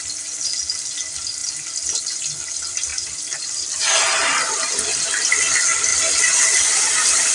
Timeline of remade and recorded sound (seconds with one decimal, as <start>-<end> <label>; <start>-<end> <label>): 0.0-2.9 recorded; 2.9-5.2 remade; 5.2-7.3 recorded